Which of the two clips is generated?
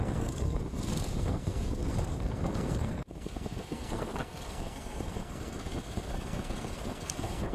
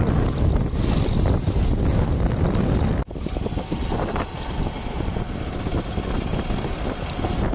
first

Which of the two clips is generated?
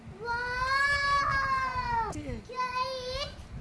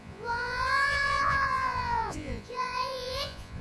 second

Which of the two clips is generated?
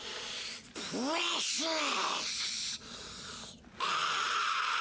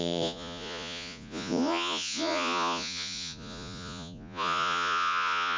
second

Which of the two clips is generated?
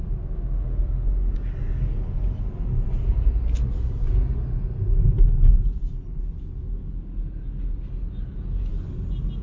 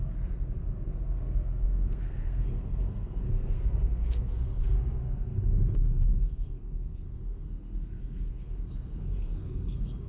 second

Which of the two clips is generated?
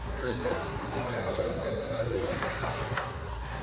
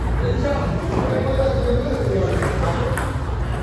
first